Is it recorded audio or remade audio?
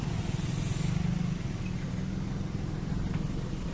recorded